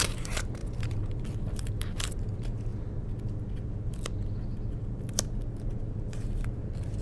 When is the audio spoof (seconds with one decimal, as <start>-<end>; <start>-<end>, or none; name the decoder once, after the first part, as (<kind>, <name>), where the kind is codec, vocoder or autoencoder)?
0.0-2.7 (vocoder, BigVGAN v2); 5.8-7.0

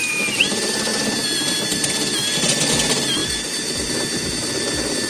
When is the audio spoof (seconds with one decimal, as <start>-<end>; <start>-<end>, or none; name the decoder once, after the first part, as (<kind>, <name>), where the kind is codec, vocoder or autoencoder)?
3.2-3.9 (vocoder, BigVGAN v2)

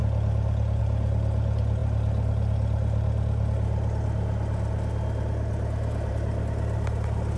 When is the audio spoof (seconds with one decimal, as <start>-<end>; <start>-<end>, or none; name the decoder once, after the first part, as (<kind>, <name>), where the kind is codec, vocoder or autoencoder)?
none

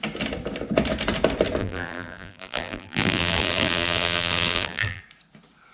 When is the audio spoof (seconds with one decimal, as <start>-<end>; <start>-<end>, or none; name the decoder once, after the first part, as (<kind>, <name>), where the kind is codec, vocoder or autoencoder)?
1.6-5.0 (vocoder, BigVGAN v2)

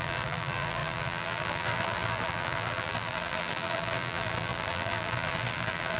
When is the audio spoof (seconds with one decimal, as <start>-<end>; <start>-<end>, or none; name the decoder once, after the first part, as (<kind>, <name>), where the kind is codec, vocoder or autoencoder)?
0.0-6.0 (vocoder, BigVGAN v2)

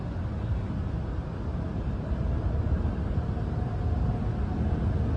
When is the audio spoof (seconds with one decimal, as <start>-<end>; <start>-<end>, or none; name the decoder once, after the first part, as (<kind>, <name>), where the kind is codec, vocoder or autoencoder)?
1.5-3.7 (vocoder, BigVGAN v2)

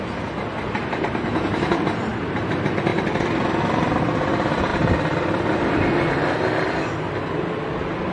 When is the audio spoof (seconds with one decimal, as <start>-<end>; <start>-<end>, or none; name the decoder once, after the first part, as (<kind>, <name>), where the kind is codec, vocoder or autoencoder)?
0.8-2.1 (vocoder, BigVGAN v2)